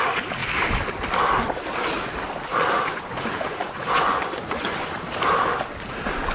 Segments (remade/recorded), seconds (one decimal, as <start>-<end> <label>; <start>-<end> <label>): 0.0-2.5 recorded; 2.5-4.9 remade; 4.9-6.3 recorded

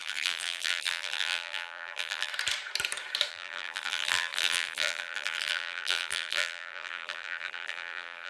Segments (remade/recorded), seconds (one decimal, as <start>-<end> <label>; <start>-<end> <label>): 0.0-2.3 remade; 2.3-3.3 recorded; 3.3-8.3 remade